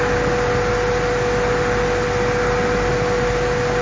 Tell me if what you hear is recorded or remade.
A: recorded